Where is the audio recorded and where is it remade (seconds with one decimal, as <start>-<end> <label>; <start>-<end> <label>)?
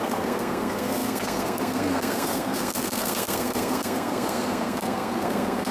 0.0-5.7 remade